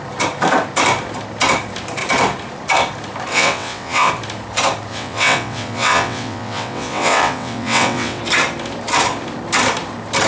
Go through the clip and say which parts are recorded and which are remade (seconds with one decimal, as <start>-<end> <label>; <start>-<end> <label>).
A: 0.0-3.3 recorded; 3.3-4.1 remade; 4.1-4.9 recorded; 4.9-8.2 remade; 8.2-10.3 recorded